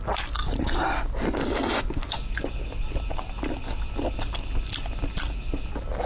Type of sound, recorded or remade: recorded